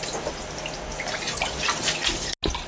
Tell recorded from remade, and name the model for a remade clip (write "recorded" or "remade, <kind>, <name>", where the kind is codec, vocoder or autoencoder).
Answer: recorded